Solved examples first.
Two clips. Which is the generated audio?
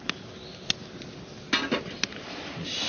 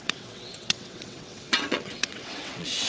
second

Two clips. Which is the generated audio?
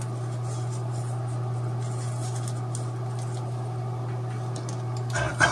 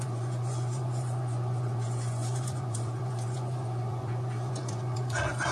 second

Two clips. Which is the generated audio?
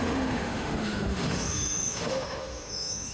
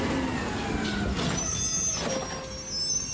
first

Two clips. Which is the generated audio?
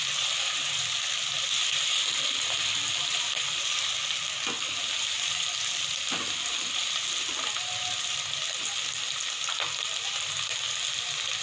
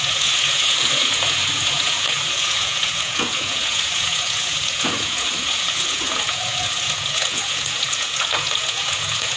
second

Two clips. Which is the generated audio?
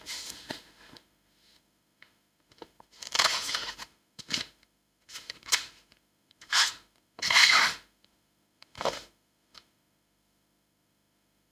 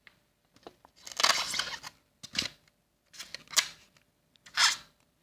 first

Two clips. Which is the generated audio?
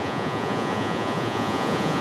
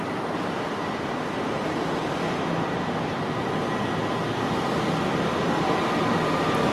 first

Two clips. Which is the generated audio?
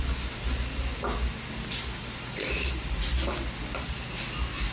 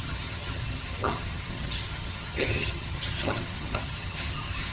second